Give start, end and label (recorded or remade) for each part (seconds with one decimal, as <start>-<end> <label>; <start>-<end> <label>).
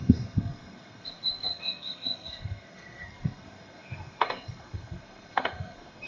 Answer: 0.0-6.1 remade